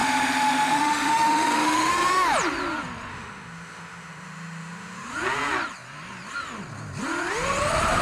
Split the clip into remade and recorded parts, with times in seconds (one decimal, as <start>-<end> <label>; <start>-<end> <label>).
0.0-1.9 remade; 1.9-3.1 recorded; 3.1-5.1 remade; 5.1-8.0 recorded